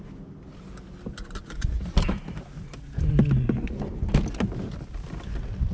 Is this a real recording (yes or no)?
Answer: yes